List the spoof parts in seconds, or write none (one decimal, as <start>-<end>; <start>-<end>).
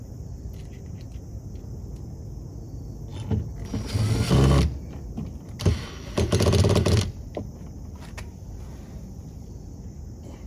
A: 4.7-10.0